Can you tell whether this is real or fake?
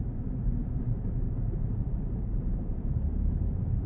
fake